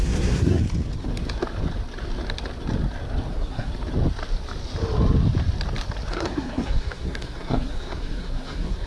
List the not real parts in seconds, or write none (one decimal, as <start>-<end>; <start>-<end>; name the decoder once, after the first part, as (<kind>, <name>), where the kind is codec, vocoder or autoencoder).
0.0-0.6 (codec, SNAC); 3.3-3.7; 6.1-8.9